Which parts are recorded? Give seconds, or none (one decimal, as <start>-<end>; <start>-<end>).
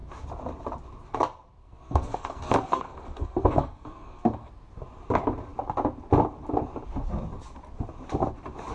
0.0-1.6; 4.5-8.7